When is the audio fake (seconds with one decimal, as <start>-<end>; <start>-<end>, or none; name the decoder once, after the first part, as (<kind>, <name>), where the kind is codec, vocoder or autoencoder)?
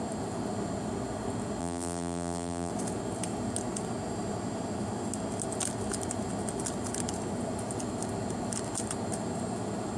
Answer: 1.6-2.7 (vocoder, BigVGAN v2)